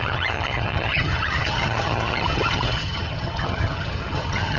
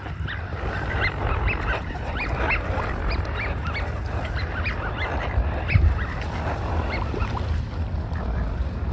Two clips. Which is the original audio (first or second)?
second